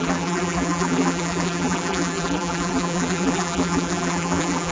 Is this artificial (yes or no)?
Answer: yes